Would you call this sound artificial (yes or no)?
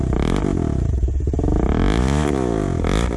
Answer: no